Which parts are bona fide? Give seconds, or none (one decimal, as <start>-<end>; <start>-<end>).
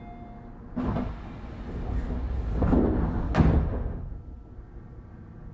0.0-3.6; 4.1-5.5